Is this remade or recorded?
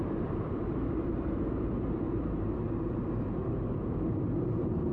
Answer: remade